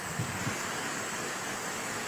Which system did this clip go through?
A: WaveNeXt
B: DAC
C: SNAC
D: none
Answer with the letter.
B